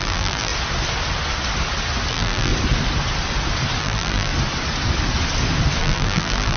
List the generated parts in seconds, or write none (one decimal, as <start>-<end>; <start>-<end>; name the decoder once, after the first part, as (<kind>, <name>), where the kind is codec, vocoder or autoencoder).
0.0-0.5 (vocoder, BigVGAN v2); 2.1-2.5; 3.8-4.3; 5.8-6.6